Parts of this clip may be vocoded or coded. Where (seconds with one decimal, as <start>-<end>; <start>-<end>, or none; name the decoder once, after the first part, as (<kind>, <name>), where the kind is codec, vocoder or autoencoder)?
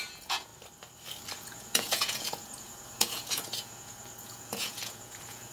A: 0.0-0.5 (vocoder, Vocos); 1.3-5.5